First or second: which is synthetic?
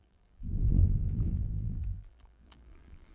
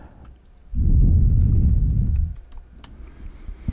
first